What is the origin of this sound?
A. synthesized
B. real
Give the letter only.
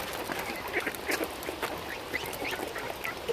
B